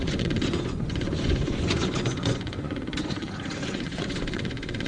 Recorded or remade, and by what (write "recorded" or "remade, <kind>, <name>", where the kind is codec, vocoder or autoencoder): remade, vocoder, Vocos